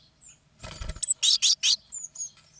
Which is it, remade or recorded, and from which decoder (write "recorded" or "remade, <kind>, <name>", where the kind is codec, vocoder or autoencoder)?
recorded